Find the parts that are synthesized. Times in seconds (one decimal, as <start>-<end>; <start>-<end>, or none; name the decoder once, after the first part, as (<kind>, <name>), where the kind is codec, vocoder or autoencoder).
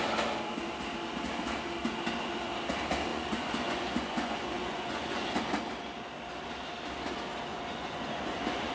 3.1-5.4 (vocoder, Vocos); 7.5-8.7